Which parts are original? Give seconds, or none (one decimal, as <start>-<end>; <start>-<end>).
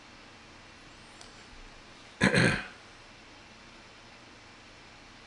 0.0-5.3